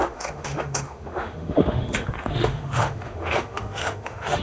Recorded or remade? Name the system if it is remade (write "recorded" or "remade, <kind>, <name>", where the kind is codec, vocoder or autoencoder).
remade, autoencoder, DAC-VAE